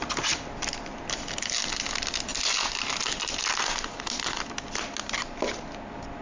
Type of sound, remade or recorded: recorded